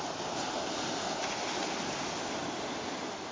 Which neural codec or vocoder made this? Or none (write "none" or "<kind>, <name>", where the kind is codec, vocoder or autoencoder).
none